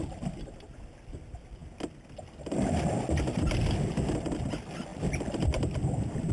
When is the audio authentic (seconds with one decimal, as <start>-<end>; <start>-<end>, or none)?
0.0-6.3